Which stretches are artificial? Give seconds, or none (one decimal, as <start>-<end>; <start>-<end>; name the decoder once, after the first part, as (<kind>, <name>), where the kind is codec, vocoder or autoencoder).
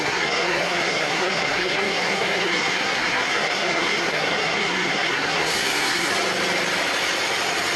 0.0-6.1 (codec, SNAC)